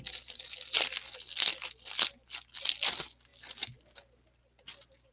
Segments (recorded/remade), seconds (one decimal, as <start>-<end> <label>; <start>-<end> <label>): 0.0-5.1 recorded